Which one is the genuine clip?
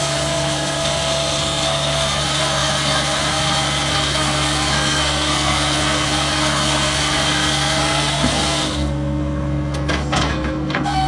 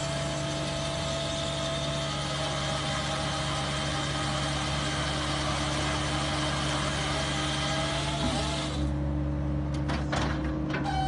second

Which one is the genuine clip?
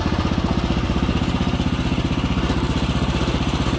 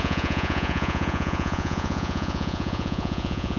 first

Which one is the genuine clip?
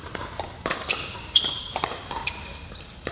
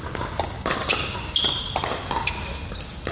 second